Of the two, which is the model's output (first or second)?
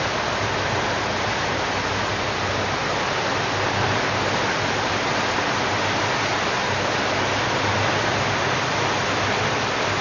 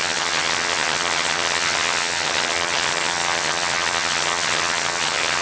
second